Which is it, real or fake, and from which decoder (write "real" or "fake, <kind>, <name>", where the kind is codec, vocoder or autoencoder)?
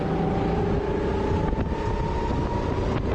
real